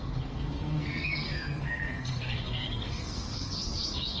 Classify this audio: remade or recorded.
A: remade